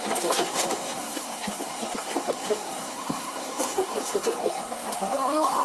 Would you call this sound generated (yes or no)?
yes